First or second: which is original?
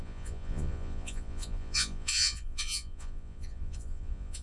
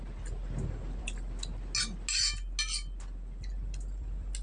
second